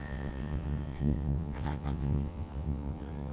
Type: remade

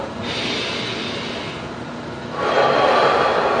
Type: recorded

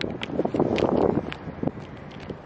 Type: recorded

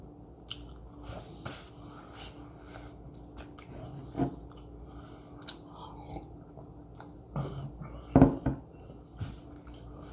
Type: recorded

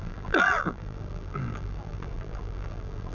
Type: remade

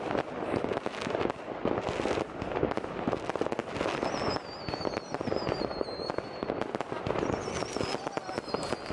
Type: recorded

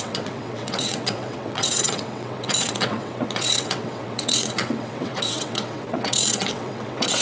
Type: remade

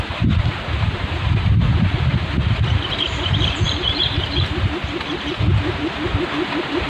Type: remade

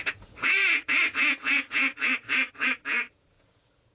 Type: remade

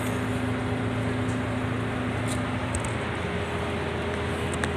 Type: recorded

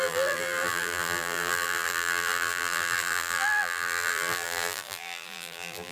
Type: remade